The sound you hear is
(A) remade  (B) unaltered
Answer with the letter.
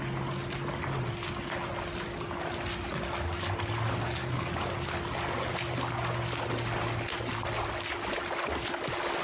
B